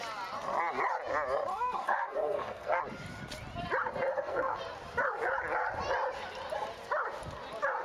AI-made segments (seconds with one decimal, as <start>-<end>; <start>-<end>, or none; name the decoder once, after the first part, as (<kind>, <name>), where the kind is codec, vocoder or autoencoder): 1.5-2.8 (codec, SNAC); 4.1-4.6